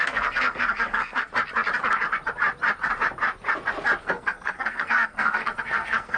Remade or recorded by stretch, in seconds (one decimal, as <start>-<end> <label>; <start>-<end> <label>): 0.0-1.3 remade; 1.3-4.0 recorded; 4.0-6.2 remade